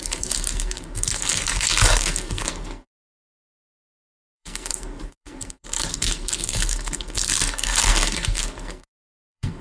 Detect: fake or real fake